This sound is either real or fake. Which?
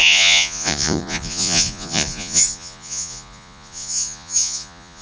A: fake